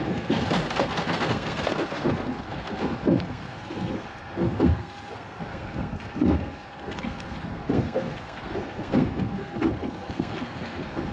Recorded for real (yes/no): no